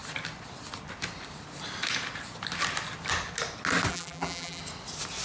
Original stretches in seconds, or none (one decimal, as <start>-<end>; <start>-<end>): 0.0-3.9; 4.6-5.2